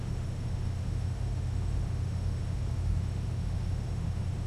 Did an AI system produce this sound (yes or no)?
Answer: yes